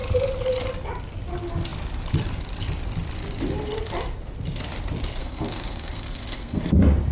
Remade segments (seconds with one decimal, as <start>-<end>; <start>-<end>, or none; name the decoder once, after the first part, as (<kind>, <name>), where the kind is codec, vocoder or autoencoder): 5.2-6.6 (codec, SNAC)